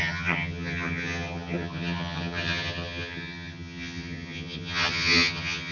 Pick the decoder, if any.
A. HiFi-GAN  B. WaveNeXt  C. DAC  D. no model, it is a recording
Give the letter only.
A